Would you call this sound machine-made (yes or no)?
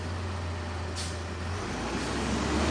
no